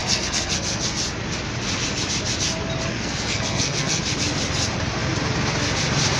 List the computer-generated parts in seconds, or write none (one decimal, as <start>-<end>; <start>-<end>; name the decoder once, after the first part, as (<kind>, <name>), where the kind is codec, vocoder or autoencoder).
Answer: 0.0-1.0 (codec, SNAC); 2.9-4.0